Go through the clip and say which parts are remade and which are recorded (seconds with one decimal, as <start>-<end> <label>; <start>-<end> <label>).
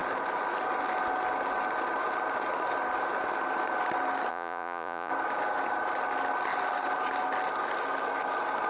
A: 0.0-4.3 recorded; 4.3-5.1 remade; 5.1-8.7 recorded